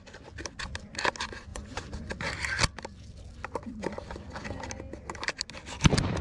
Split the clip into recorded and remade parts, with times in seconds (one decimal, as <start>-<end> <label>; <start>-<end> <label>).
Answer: 0.0-1.5 recorded; 1.5-2.1 remade; 2.1-6.2 recorded